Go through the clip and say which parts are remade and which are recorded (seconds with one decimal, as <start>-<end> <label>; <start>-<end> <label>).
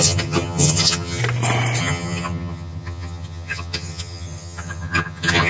0.0-1.2 remade; 1.2-1.8 recorded; 1.8-5.5 remade